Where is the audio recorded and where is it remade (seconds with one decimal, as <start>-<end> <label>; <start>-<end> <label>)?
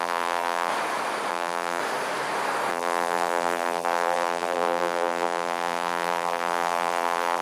0.0-0.7 remade; 0.7-1.3 recorded; 1.3-1.8 remade; 1.8-2.7 recorded; 2.7-7.4 remade